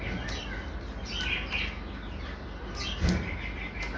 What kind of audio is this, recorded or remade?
recorded